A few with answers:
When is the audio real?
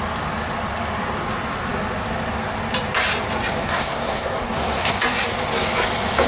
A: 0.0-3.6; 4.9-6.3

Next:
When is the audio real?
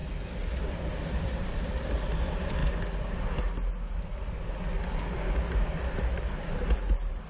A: 0.0-0.7; 2.6-5.5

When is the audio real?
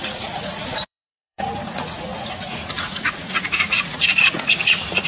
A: none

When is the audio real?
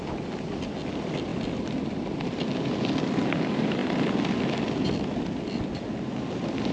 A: 0.0-6.7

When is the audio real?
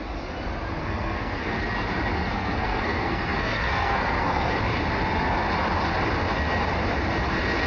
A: 0.0-0.8; 1.6-2.2; 4.5-7.7